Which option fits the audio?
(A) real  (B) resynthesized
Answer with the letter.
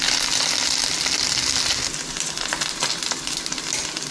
A